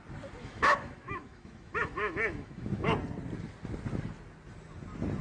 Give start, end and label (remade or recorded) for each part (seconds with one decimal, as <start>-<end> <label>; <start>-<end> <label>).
0.0-0.4 recorded; 0.4-2.9 remade; 2.9-5.2 recorded